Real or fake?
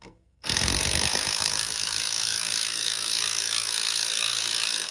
fake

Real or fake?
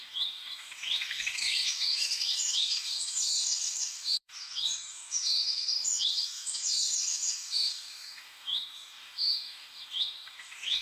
fake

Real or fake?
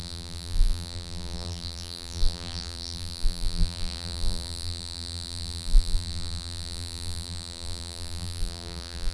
fake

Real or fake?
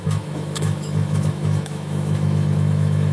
fake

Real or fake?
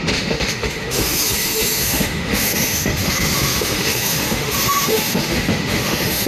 fake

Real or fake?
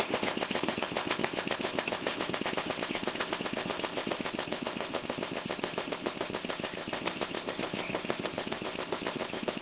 fake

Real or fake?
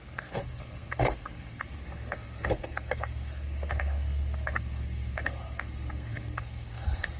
fake